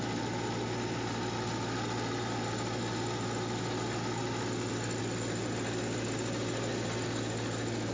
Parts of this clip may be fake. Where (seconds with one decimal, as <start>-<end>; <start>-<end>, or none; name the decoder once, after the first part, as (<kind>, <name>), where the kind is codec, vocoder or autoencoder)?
none